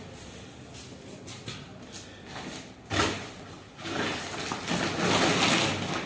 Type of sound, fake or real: real